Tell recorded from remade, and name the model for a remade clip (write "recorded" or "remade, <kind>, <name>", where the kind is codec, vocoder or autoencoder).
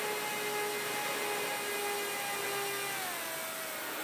recorded